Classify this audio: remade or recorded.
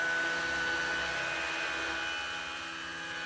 recorded